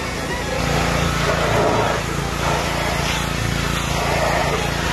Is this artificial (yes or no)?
no